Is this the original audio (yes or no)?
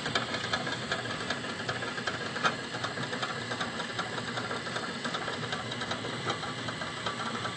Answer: yes